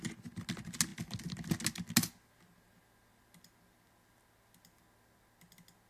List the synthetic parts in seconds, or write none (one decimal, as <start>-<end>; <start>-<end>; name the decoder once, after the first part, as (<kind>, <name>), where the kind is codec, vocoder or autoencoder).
none